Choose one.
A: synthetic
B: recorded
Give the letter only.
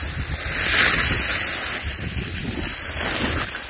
B